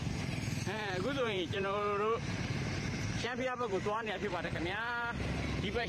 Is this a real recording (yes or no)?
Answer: no